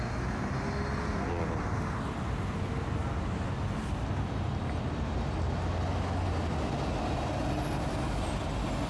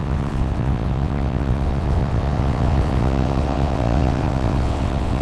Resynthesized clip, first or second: second